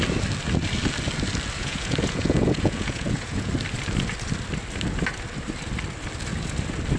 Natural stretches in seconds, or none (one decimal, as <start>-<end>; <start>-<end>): 0.0-1.6; 3.5-7.0